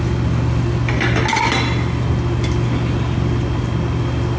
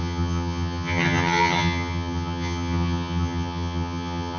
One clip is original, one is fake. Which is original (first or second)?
first